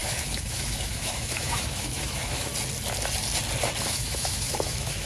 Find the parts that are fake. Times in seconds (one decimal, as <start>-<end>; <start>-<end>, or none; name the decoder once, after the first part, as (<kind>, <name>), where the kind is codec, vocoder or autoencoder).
0.0-2.5 (autoencoder, DAC-VAE); 3.9-5.1